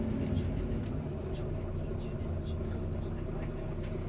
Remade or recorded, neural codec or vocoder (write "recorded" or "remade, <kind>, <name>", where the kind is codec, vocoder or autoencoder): recorded